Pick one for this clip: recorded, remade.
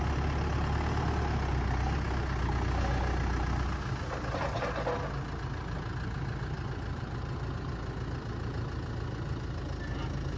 recorded